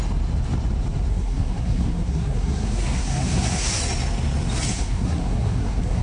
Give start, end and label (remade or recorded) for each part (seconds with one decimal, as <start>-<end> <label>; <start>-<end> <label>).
0.0-1.1 recorded; 1.1-3.8 remade; 3.8-4.7 recorded; 4.7-6.0 remade